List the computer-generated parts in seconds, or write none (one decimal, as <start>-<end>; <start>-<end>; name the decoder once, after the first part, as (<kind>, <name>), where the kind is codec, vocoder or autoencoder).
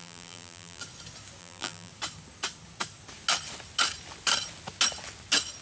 0.0-0.8 (vocoder, BigVGAN v2); 1.4-1.9